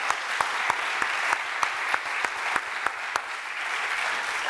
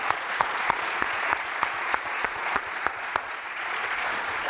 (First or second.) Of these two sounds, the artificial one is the second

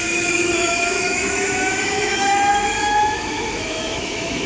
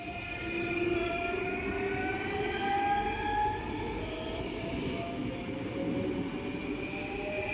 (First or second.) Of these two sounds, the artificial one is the first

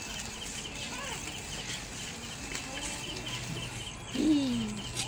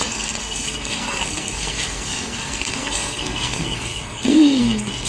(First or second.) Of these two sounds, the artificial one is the second